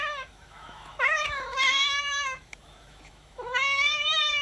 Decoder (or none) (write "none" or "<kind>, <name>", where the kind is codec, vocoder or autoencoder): autoencoder, DAC-VAE